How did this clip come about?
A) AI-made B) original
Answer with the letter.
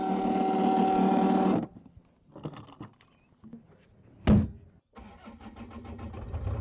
B